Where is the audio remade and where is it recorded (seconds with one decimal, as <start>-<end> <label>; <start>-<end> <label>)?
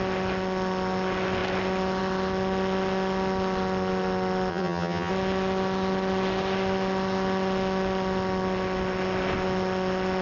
0.0-4.5 recorded; 4.5-5.1 remade; 5.1-10.2 recorded